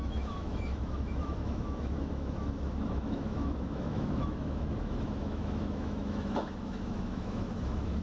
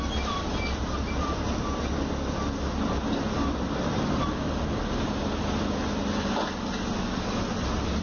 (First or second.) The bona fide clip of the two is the second